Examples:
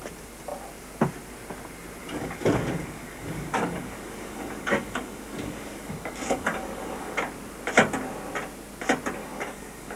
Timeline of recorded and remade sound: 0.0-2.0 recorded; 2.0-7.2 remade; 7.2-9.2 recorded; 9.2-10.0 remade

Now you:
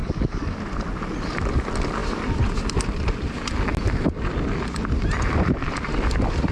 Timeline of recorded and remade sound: 0.0-0.6 remade; 0.6-6.5 recorded

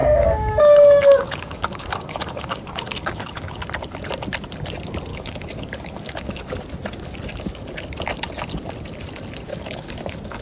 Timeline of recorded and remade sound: 0.0-3.6 remade; 3.6-5.1 recorded; 5.1-6.5 remade; 6.5-9.5 recorded; 9.5-10.4 remade

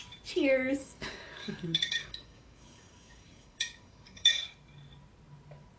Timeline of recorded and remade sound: 0.0-0.8 recorded; 0.8-4.3 remade; 4.3-5.8 recorded